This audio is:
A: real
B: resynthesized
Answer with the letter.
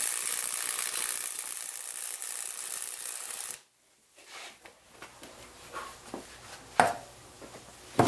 A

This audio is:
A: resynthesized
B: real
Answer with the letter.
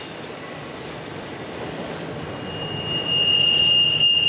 B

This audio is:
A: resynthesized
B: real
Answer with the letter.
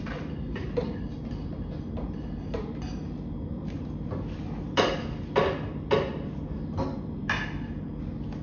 B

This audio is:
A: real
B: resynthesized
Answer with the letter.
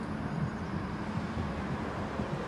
B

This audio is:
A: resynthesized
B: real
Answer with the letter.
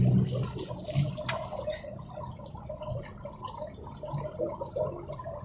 B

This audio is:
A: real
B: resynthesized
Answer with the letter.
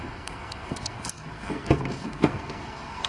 B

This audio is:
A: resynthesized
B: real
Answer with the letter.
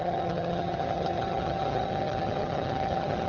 A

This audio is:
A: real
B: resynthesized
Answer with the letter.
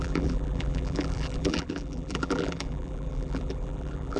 B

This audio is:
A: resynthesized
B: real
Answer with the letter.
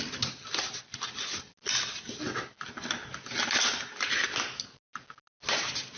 B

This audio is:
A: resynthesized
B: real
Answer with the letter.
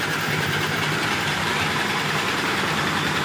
A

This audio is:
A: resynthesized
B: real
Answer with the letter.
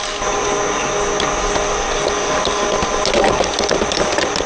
B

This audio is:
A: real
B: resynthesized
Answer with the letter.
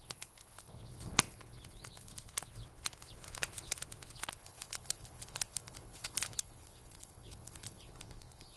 B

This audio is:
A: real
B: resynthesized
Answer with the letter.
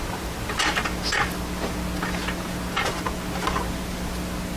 A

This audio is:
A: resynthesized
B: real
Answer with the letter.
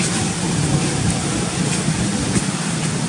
B